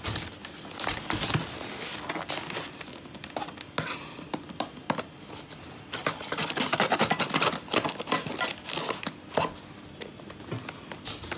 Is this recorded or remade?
recorded